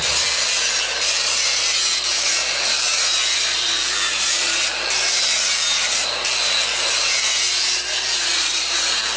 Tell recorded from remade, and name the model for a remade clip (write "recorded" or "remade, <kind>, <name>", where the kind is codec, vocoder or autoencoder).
remade, vocoder, BigVGAN v2